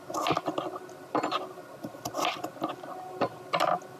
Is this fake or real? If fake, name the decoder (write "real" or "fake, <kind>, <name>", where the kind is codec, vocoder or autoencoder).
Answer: real